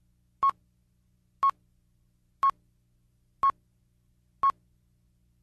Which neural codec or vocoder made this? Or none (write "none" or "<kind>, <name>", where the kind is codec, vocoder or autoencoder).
none